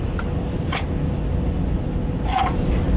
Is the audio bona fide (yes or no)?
yes